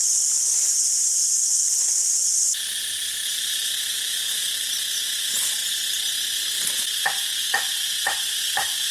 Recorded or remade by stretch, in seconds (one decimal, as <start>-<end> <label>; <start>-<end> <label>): 0.0-5.6 remade; 5.6-7.4 recorded; 7.4-8.9 remade